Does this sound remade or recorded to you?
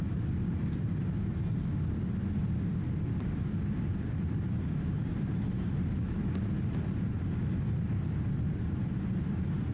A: recorded